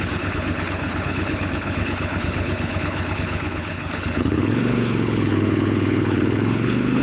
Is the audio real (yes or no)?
no